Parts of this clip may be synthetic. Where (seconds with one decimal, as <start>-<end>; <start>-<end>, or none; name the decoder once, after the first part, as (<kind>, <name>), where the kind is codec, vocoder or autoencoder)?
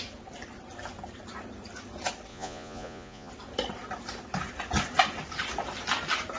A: 2.3-3.3 (vocoder, Vocos)